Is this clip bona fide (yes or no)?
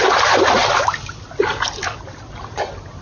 yes